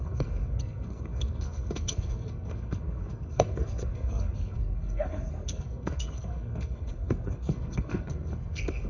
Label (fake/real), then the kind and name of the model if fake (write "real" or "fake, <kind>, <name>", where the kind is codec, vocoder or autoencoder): fake, codec, SNAC